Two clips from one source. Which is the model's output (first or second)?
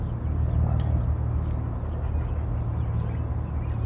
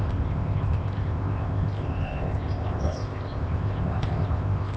second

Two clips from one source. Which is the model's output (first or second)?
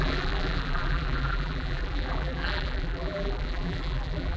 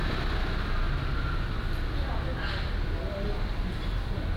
first